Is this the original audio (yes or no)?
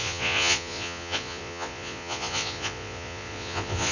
no